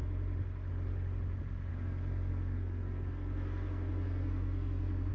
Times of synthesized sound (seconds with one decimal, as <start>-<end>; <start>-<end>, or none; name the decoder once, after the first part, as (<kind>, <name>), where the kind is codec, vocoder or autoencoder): 1.7-5.1 (codec, SNAC)